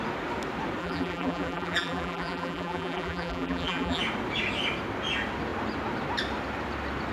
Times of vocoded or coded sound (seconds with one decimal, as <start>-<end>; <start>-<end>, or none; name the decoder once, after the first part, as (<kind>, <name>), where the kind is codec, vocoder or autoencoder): 0.8-4.0 (vocoder, BigVGAN v2)